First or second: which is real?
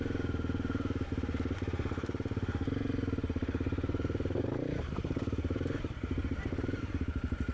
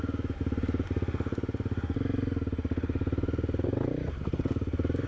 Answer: second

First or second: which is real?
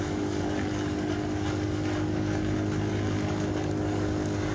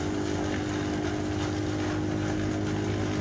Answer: second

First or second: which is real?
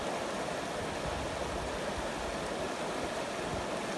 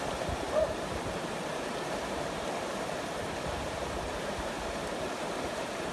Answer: first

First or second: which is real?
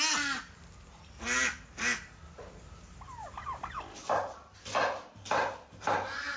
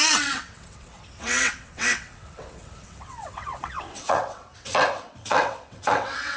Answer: first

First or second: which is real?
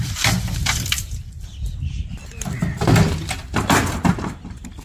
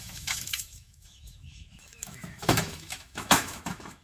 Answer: first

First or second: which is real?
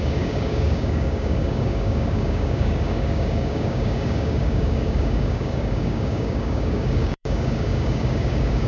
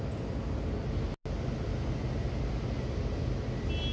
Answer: second